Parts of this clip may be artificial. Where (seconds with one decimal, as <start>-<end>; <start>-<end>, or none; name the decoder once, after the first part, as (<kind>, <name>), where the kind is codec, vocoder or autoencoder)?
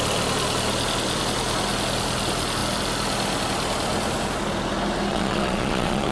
5.1-6.1 (vocoder, Vocos)